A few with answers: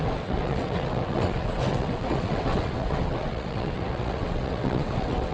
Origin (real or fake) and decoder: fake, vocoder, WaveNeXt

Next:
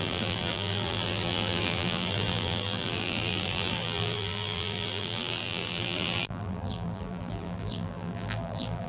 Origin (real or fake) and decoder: fake, vocoder, BigVGAN v2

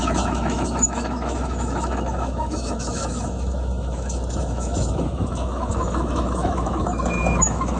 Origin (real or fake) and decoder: fake, autoencoder, DAC-VAE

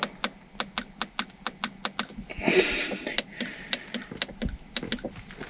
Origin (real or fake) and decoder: real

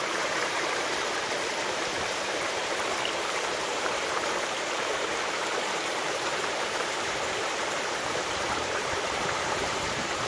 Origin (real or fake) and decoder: fake, vocoder, BigVGAN v2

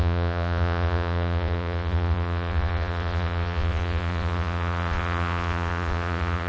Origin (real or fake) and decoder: fake, vocoder, Vocos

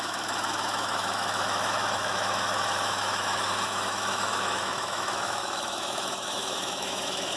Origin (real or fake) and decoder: fake, autoencoder, DAC-VAE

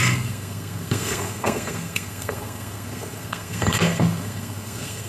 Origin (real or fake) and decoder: fake, codec, SNAC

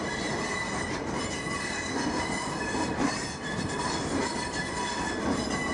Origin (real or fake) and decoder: real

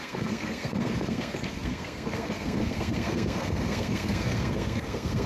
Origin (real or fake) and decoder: fake, codec, SNAC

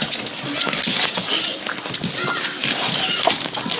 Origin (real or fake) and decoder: real